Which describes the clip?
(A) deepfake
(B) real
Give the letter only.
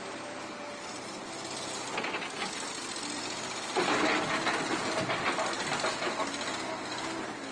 B